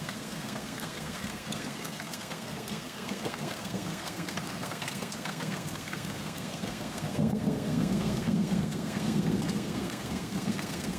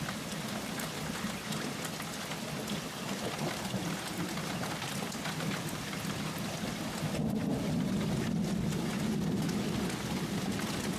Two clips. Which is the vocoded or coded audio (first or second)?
first